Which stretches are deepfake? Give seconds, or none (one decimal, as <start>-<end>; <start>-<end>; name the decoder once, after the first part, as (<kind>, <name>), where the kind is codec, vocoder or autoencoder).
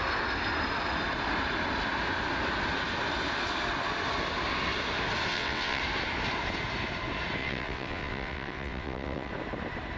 5.3-5.8 (vocoder, WaveNeXt); 7.4-9.3